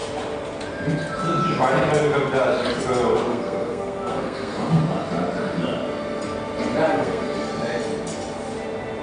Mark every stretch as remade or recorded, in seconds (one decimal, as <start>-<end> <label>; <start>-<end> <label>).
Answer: 0.0-3.3 recorded; 3.3-4.8 remade; 4.8-6.9 recorded; 6.9-7.5 remade; 7.5-9.0 recorded